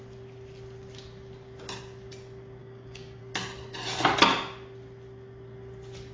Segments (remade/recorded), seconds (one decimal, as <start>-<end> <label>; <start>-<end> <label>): 0.0-2.6 recorded; 2.6-3.2 remade; 3.2-6.1 recorded